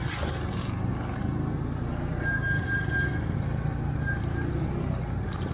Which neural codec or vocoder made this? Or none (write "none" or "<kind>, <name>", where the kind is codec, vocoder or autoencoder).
vocoder, BigVGAN v2